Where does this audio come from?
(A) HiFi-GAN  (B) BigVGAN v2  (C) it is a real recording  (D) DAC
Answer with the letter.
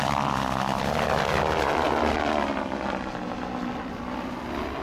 C